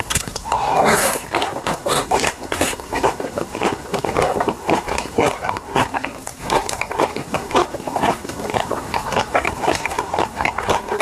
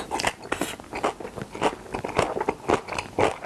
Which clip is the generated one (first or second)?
first